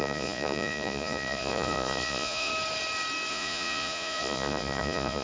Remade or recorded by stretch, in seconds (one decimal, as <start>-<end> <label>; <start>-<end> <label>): 0.0-2.5 remade; 2.5-3.3 recorded; 3.3-5.2 remade